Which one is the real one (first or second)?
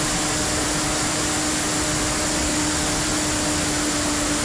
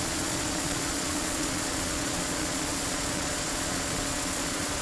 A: first